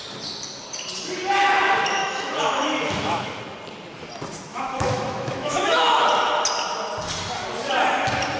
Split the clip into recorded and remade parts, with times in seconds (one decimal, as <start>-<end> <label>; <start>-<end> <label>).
0.0-2.0 recorded; 2.0-3.4 remade; 3.4-4.5 recorded; 4.5-6.0 remade; 6.0-8.4 recorded